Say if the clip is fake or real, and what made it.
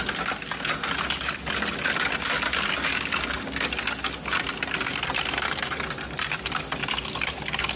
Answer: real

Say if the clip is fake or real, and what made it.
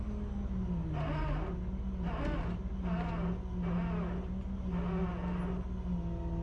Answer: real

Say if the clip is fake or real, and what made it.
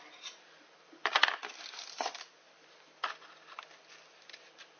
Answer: fake, vocoder, BigVGAN v2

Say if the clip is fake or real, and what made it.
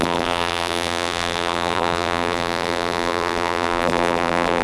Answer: fake, vocoder, BigVGAN v2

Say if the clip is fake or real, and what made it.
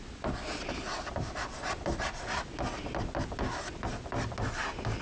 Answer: real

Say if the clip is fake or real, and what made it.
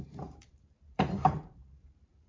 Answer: fake, vocoder, BigVGAN v2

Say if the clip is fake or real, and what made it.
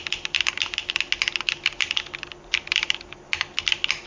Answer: real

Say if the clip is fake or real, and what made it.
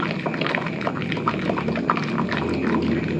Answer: real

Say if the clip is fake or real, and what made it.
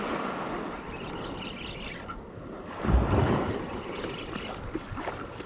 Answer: real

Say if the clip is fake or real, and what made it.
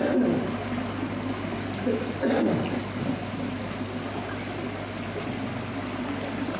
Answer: real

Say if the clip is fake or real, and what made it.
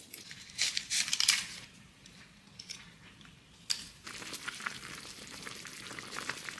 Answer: fake, vocoder, BigVGAN v2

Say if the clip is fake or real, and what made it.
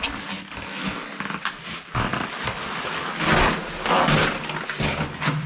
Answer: real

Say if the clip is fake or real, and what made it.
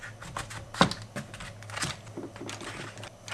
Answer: real